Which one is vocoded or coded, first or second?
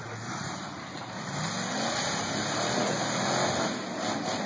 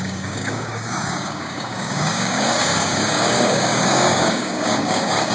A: second